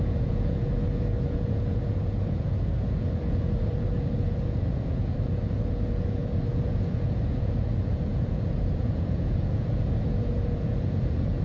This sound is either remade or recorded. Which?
remade